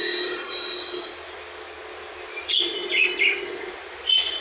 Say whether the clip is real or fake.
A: real